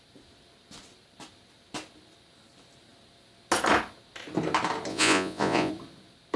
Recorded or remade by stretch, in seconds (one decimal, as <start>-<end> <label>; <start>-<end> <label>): 0.0-4.9 recorded; 4.9-5.7 remade; 5.7-6.4 recorded